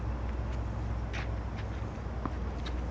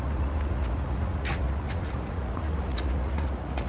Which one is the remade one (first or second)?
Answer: second